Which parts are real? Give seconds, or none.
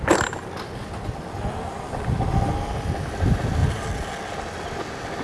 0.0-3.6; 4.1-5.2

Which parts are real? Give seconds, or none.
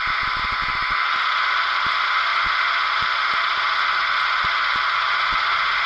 0.0-5.9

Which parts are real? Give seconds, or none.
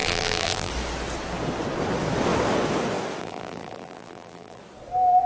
0.7-3.2; 4.6-5.3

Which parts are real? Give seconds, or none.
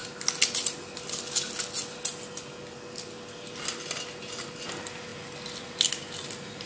0.0-6.7